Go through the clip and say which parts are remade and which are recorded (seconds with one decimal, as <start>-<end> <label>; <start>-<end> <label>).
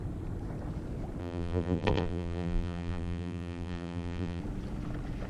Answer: 0.0-1.2 recorded; 1.2-4.4 remade; 4.4-5.3 recorded